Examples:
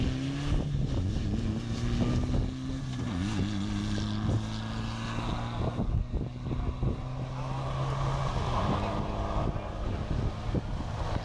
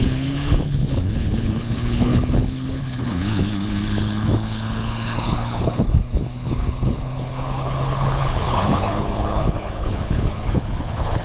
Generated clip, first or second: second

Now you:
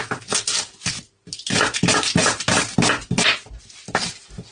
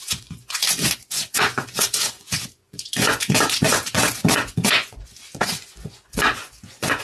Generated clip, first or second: second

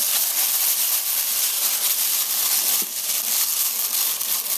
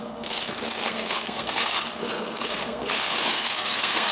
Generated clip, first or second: second